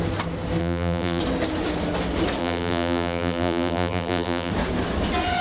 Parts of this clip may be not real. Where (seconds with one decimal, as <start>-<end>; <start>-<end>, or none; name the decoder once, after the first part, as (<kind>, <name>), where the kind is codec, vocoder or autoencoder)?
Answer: 0.6-1.2 (vocoder, BigVGAN v2); 2.4-4.5